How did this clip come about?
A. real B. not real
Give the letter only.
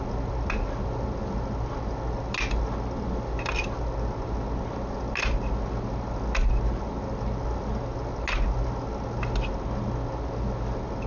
A